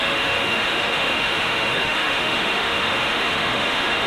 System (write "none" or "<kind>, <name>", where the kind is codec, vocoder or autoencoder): autoencoder, DAC-VAE